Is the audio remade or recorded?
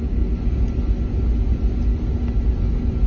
recorded